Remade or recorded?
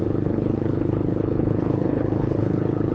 remade